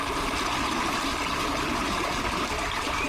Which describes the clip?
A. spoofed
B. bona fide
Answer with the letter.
A